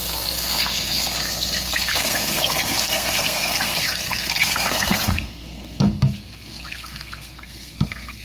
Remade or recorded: remade